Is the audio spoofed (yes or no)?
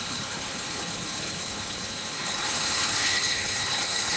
yes